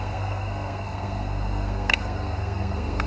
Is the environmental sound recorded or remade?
remade